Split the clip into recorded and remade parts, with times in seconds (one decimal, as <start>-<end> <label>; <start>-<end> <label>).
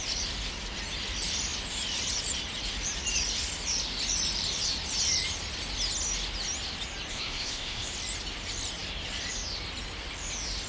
0.0-7.1 recorded; 7.1-7.9 remade; 7.9-10.7 recorded